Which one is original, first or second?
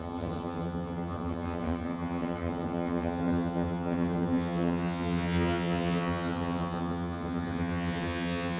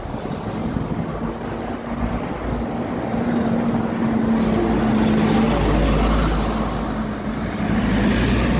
second